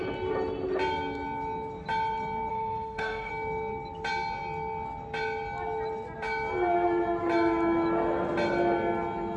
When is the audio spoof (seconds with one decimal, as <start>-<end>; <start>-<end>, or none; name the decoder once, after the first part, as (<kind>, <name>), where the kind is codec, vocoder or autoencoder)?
2.5-3.3 (autoencoder, DAC-VAE)